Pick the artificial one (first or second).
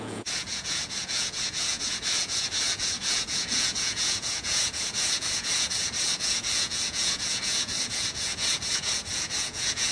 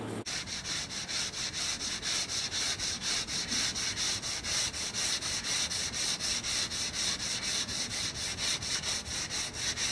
first